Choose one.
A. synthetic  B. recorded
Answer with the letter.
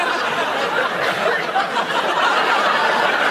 B